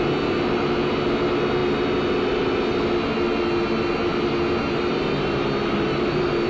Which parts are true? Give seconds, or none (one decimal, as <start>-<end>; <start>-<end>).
0.0-6.5